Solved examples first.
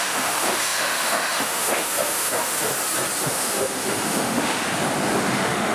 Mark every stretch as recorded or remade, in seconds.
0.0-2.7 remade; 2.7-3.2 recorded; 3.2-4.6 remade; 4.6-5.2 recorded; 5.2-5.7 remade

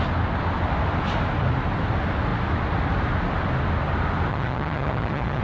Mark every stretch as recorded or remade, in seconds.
0.0-4.3 recorded; 4.3-5.4 remade

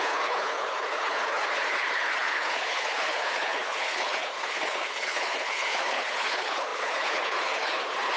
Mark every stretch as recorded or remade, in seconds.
0.0-8.2 remade

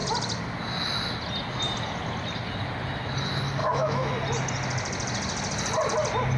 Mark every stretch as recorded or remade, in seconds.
0.0-3.6 recorded; 3.6-4.1 remade; 4.1-6.4 recorded

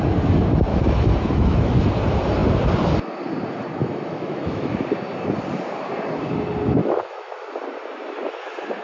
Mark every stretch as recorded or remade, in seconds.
0.0-0.7 recorded; 0.7-1.8 remade; 1.8-3.8 recorded; 3.8-4.7 remade; 4.7-6.8 recorded; 6.8-7.5 remade; 7.5-8.8 recorded